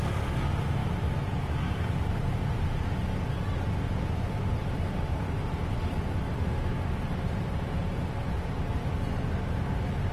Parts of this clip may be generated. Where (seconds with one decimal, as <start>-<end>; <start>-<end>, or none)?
7.8-8.7